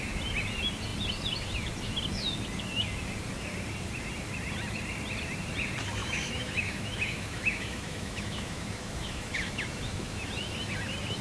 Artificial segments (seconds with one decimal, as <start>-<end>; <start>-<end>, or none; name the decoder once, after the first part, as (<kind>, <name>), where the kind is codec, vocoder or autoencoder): 6.0-10.3 (autoencoder, DAC-VAE)